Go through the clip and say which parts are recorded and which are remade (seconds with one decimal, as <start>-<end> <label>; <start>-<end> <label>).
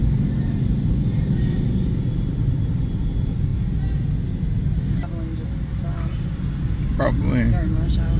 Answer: 0.0-8.2 recorded